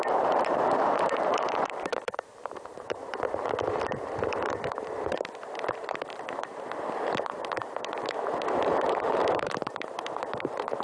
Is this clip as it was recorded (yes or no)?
no